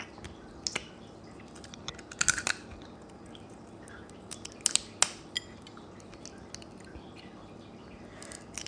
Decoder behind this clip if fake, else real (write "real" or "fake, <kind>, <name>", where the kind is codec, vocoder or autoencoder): real